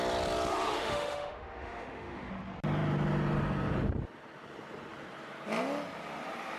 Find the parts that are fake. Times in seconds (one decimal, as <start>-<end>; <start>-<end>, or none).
0.5-2.3